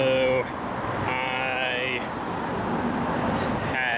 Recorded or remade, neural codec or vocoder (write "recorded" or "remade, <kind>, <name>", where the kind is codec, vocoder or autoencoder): recorded